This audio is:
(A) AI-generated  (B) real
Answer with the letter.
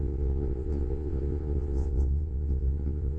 A